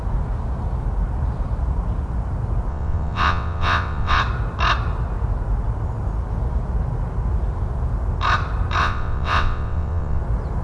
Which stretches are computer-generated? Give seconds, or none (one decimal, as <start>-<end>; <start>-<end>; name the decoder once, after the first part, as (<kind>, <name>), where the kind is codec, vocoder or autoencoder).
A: 2.7-4.2 (vocoder, WaveNeXt); 8.8-10.2